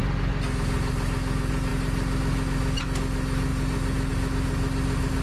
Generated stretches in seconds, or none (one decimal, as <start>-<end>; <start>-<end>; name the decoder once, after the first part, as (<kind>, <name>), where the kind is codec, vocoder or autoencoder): none